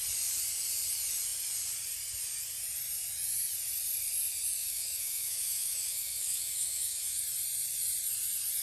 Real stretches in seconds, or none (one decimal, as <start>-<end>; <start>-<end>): 0.0-4.6; 7.2-8.6